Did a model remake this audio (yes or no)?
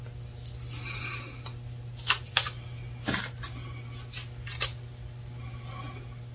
no